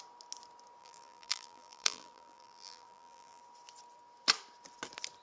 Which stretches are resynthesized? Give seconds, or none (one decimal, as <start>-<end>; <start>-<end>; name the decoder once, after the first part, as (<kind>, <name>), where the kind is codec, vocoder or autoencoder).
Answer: 0.8-3.4 (vocoder, BigVGAN v2)

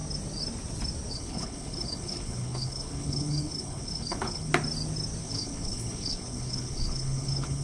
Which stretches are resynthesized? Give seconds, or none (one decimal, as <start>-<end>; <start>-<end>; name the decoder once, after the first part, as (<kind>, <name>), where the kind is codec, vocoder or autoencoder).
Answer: 1.1-4.5 (codec, HILCodec); 5.2-7.6

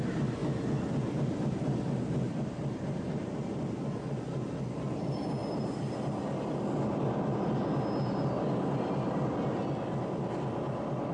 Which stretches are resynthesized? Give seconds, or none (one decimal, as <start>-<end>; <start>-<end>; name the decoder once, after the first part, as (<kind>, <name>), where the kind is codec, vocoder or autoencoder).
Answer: none